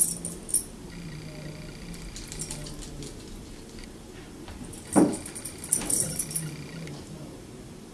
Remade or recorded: recorded